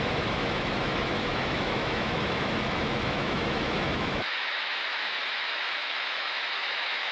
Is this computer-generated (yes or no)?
yes